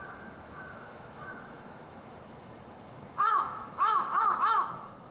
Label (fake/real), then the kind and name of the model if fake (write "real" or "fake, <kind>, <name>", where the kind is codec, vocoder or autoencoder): fake, autoencoder, DAC-VAE